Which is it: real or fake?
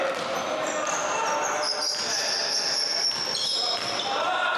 real